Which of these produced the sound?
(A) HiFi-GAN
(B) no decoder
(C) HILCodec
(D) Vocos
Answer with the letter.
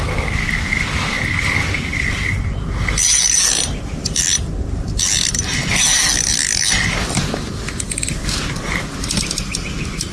B